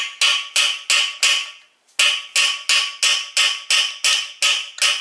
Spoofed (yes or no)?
no